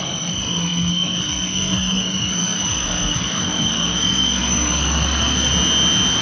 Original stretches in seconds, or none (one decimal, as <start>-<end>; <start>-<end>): 5.5-6.2